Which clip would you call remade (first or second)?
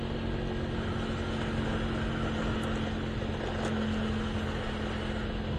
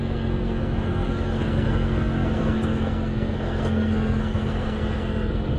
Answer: second